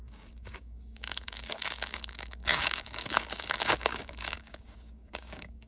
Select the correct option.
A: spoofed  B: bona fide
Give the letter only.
A